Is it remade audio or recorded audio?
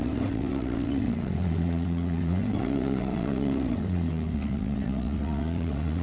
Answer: remade